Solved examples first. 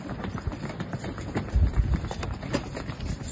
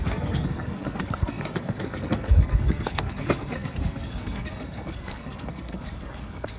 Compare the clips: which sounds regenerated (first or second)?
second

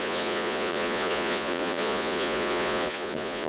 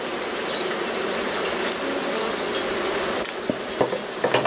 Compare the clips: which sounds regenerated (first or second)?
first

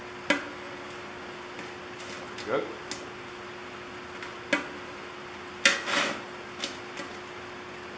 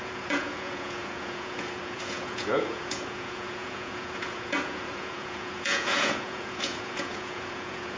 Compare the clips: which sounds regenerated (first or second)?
second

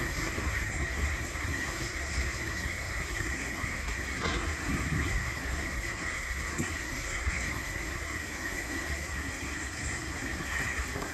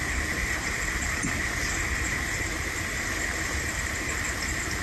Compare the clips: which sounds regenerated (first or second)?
first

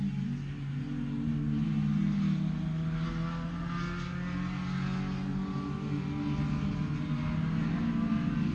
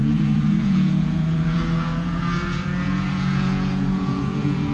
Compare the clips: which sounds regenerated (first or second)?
second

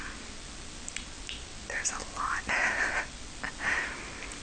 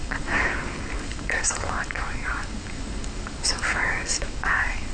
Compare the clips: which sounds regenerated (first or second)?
second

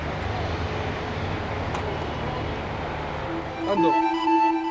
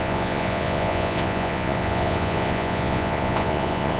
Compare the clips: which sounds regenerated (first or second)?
second